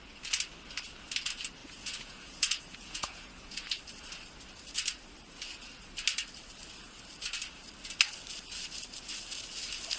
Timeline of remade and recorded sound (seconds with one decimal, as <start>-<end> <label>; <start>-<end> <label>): 0.0-1.6 recorded; 1.6-3.8 remade; 3.8-10.0 recorded